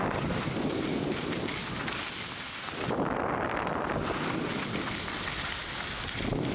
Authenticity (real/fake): real